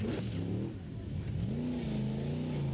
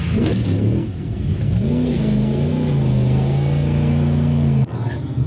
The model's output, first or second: second